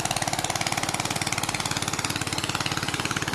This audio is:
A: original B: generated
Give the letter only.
A